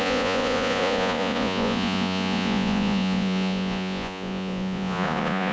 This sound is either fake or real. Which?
fake